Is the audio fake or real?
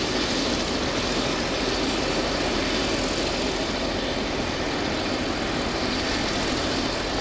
real